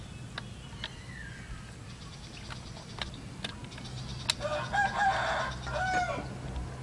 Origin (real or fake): real